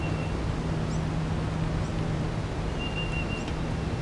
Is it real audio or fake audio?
real